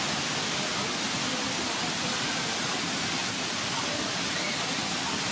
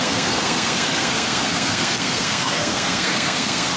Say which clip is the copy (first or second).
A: second